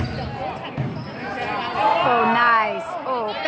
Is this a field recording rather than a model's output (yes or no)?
yes